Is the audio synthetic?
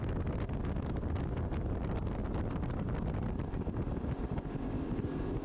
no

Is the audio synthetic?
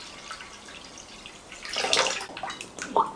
no